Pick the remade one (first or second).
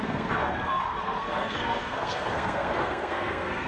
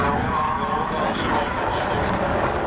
first